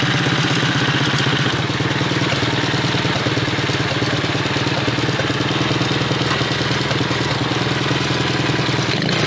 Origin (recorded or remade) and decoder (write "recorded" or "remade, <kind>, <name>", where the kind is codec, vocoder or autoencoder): recorded